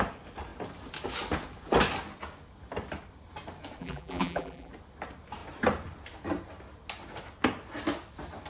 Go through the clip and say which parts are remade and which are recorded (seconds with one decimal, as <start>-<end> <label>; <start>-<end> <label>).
0.0-3.8 recorded; 3.8-4.7 remade; 4.7-8.5 recorded